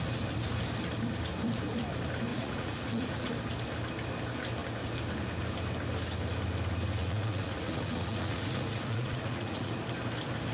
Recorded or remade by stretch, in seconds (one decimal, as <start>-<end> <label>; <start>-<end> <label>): 0.0-2.3 recorded; 2.3-3.3 remade; 3.3-7.0 recorded; 7.0-9.7 remade; 9.7-10.5 recorded